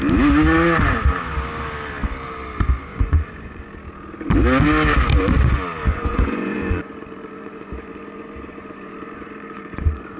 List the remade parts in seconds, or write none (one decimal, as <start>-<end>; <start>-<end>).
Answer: 2.9-3.7; 5.9-10.2